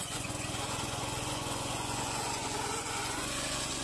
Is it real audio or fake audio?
fake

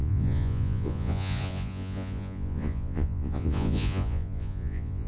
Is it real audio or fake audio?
fake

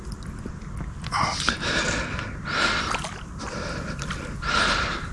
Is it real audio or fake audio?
real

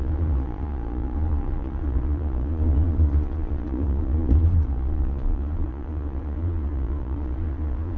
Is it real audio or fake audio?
fake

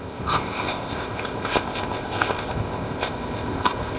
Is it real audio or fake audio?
fake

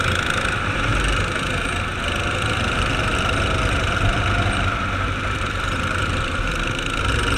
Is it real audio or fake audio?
fake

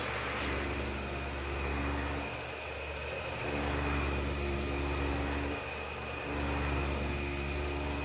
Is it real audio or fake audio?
real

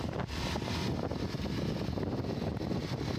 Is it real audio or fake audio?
real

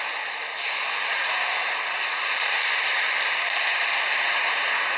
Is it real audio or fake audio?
real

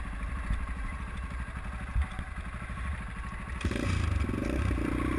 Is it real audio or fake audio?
real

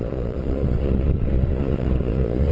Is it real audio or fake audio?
fake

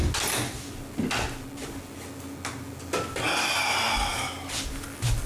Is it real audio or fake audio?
real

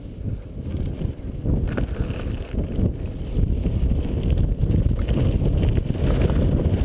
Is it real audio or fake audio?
real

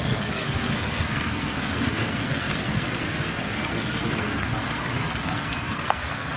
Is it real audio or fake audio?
fake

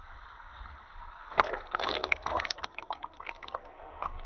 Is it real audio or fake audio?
fake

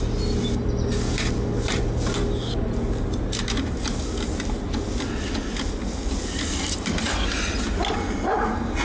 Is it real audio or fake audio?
real